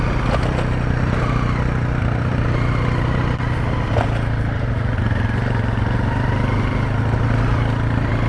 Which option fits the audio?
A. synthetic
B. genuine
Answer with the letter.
B